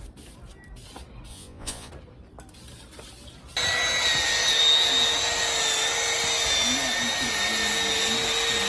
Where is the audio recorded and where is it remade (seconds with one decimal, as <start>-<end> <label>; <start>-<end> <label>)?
0.0-1.3 recorded; 1.3-1.9 remade; 1.9-8.7 recorded